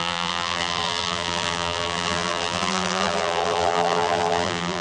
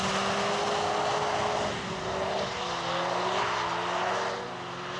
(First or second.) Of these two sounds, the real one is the second